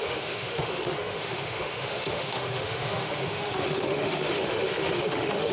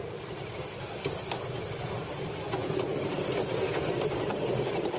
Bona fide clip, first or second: second